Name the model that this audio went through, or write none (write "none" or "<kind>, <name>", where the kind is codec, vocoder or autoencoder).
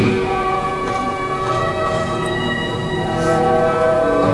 vocoder, Vocos